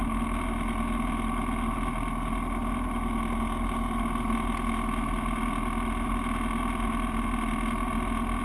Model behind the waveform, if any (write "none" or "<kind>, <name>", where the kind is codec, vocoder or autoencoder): none